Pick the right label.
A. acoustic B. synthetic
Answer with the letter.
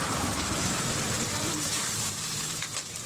B